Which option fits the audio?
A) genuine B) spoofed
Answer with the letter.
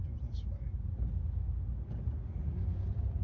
A